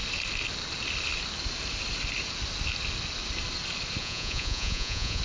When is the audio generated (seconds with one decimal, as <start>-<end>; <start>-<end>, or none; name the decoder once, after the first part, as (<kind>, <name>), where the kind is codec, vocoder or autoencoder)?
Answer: 4.0-5.2 (vocoder, Vocos)